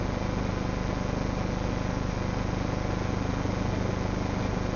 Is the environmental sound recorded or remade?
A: recorded